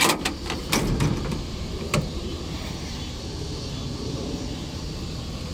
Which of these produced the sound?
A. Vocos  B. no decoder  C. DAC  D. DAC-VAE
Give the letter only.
B